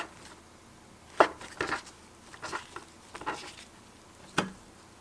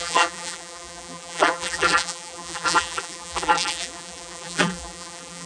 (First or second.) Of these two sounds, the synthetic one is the second